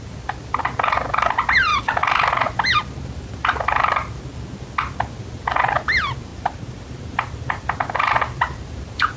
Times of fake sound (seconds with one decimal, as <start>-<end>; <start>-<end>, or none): 6.3-7.6